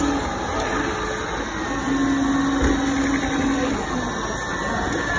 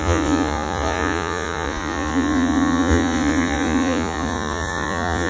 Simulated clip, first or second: second